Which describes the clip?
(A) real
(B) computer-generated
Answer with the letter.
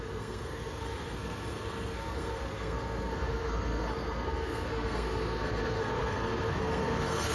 B